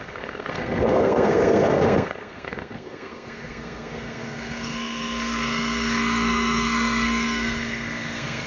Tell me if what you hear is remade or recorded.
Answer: remade